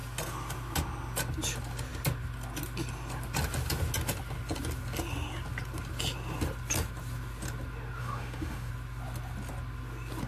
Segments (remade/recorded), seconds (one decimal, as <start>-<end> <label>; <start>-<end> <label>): 0.0-8.0 recorded; 8.0-8.7 remade; 8.7-10.3 recorded

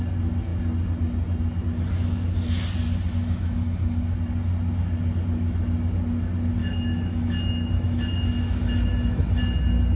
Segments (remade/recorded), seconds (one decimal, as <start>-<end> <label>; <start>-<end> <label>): 0.0-3.2 recorded; 3.2-4.0 remade; 4.0-6.6 recorded; 6.6-9.4 remade; 9.4-10.0 recorded

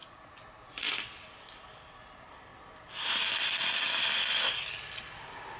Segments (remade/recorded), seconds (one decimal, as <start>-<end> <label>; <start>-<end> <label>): 0.0-5.6 recorded

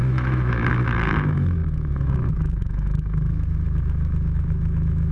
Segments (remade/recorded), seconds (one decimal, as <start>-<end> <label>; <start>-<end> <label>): 0.0-5.1 remade

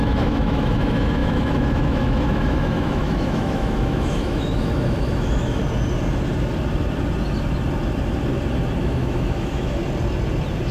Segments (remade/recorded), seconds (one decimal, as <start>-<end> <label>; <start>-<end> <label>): 0.0-5.6 remade; 5.6-8.8 recorded; 8.8-9.8 remade; 9.8-10.7 recorded

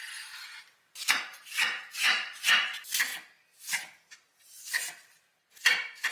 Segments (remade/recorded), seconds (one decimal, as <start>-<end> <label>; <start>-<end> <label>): 0.0-6.1 recorded